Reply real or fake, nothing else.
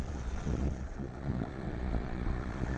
fake